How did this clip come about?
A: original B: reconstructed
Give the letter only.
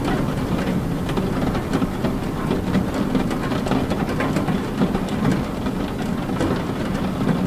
A